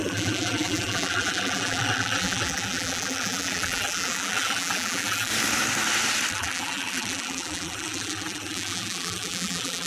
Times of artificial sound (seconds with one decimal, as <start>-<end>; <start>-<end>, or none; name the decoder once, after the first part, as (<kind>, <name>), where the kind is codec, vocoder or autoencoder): 0.0-5.3 (vocoder, BigVGAN v2); 6.3-9.9